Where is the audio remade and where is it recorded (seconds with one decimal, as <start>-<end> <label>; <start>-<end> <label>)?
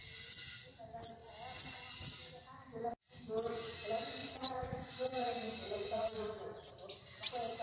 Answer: 0.0-4.2 recorded; 4.2-6.7 remade; 6.7-7.6 recorded